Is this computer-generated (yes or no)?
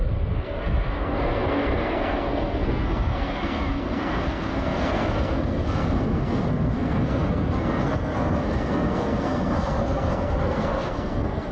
yes